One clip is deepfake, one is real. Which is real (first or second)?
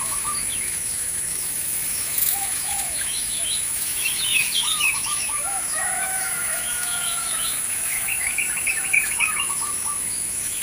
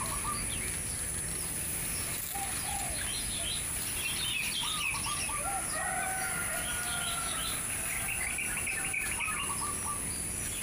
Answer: second